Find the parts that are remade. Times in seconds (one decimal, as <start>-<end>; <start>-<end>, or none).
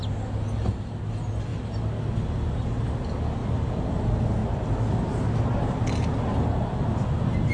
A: 3.4-4.0